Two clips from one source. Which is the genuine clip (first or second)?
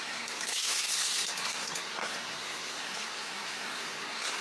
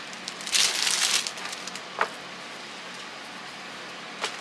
second